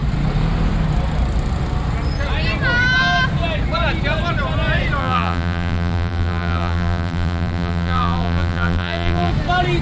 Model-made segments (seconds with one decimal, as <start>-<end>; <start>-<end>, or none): 5.0-9.3